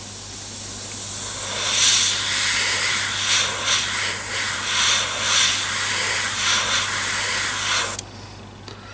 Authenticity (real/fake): real